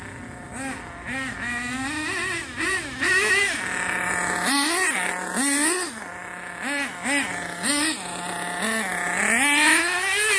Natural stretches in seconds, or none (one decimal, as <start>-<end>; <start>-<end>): 0.0-10.4